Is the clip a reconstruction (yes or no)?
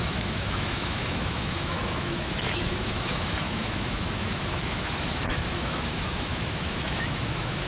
yes